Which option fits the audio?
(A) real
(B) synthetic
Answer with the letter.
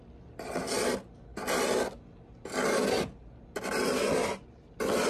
A